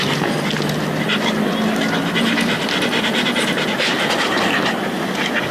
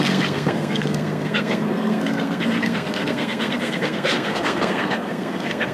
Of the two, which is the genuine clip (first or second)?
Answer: first